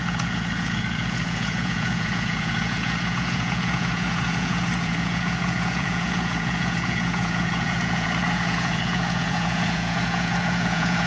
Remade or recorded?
remade